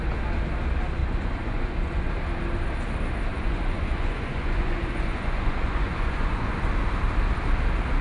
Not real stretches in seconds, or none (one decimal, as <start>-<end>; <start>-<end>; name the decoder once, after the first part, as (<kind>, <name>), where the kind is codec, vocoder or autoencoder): 1.0-2.1 (vocoder, Vocos); 3.3-6.7

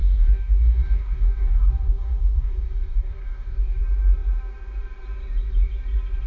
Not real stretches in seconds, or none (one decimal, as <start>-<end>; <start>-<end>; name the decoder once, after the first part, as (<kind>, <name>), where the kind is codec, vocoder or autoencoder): 0.0-3.8 (codec, DAC)

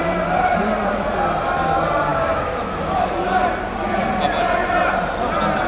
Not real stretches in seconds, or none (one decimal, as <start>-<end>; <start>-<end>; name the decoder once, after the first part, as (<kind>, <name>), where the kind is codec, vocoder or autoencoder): 2.1-3.1 (autoencoder, DAC-VAE)

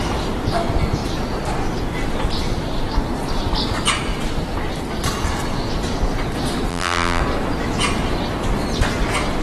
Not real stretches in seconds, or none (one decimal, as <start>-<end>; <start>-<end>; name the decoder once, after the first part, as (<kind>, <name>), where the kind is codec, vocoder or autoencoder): 6.7-7.2 (vocoder, BigVGAN v2)

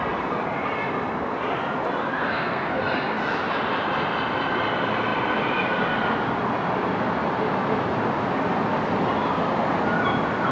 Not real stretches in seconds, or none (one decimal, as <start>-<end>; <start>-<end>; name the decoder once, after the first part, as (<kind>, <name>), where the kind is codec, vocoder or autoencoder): 2.2-2.8 (codec, SNAC)

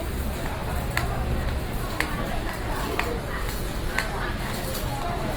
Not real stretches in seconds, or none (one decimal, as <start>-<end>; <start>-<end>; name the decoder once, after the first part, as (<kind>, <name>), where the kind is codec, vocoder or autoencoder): none

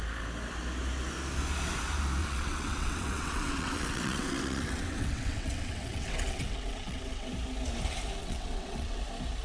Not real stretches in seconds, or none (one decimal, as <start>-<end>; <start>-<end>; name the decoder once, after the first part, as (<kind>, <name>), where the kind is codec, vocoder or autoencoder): 2.2-7.3 (vocoder, WaveNeXt); 8.2-9.0

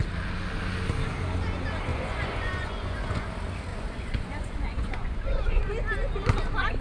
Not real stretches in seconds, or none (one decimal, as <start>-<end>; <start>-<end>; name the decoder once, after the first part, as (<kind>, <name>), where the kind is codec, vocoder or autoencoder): 1.9-3.3 (vocoder, Vocos); 3.7-5.7